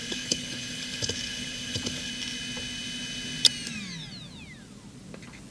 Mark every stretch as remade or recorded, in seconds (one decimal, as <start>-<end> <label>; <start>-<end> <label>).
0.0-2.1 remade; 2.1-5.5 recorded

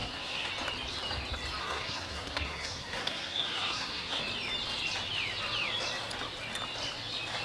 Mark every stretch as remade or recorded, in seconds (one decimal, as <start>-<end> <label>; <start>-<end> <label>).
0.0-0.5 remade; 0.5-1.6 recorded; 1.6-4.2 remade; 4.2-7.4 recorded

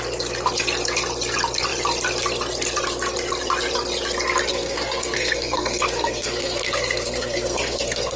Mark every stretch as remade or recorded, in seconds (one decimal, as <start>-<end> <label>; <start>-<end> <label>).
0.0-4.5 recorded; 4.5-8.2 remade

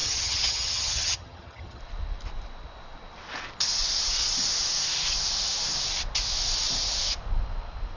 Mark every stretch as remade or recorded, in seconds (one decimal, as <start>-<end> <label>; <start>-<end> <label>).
0.0-1.8 remade; 1.8-8.0 recorded

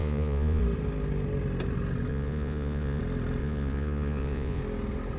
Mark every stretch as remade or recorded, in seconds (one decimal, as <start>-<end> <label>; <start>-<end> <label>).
0.0-0.6 remade; 0.6-2.1 recorded; 2.1-3.0 remade; 3.0-3.4 recorded; 3.4-4.6 remade; 4.6-5.2 recorded